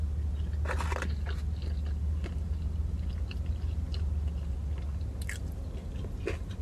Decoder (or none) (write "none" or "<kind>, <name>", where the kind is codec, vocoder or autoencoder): none